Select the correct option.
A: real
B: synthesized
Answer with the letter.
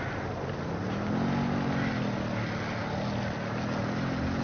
A